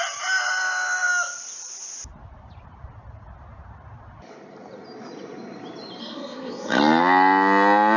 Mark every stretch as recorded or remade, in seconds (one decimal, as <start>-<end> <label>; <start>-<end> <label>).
0.0-6.0 recorded; 6.0-6.8 remade; 6.8-8.0 recorded